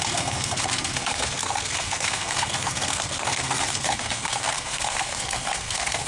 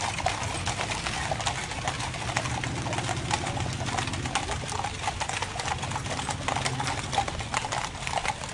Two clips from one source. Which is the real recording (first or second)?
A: second